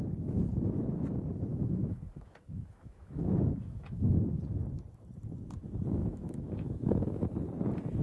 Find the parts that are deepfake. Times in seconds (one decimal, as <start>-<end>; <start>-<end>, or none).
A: 1.5-4.4; 6.0-7.2